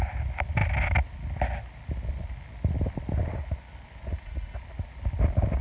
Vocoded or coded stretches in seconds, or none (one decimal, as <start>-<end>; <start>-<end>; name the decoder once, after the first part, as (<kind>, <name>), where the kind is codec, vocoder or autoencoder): 4.1-4.6 (vocoder, Vocos)